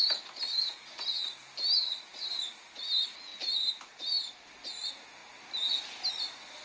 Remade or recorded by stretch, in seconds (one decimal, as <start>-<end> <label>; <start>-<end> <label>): 0.0-6.6 recorded